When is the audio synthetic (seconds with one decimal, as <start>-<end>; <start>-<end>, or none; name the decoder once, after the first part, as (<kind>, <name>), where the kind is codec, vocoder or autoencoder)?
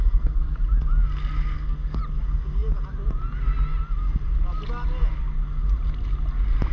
0.0-0.6 (codec, SNAC); 1.5-2.0